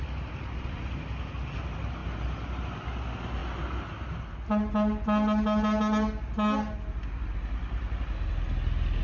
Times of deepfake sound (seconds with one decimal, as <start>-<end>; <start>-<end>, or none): none